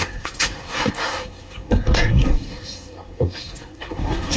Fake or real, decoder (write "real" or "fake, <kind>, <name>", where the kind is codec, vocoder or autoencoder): fake, codec, SNAC